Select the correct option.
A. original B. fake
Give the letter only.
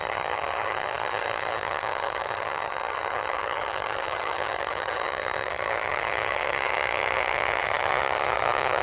B